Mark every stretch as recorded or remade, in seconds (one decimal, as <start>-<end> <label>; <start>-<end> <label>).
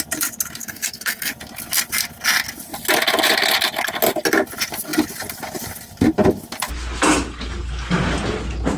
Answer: 0.0-0.6 recorded; 0.6-1.3 remade; 1.3-8.8 recorded